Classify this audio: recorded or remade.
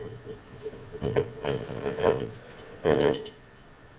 remade